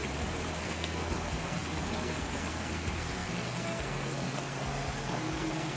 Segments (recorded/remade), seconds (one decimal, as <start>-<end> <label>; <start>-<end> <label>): 0.0-0.6 recorded; 0.6-5.8 remade